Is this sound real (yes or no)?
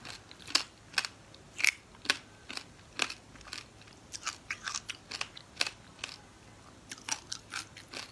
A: yes